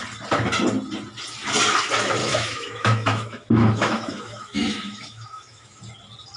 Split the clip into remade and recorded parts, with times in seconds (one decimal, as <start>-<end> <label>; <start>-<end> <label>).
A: 0.0-2.2 recorded; 2.2-5.8 remade; 5.8-6.4 recorded